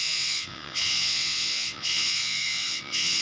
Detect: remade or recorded remade